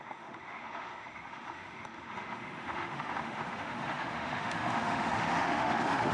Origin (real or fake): fake